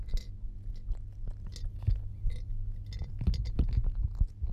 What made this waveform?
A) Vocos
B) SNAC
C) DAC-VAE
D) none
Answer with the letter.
D